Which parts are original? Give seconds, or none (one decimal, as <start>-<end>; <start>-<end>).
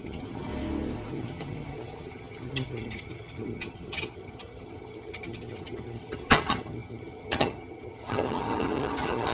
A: 0.5-1.1